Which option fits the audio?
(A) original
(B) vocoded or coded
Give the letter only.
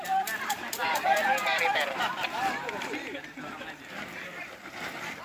B